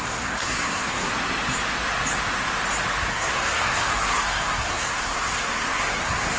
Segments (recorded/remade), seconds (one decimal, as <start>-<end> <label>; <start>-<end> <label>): 0.0-1.1 remade; 1.1-3.1 recorded; 3.1-6.4 remade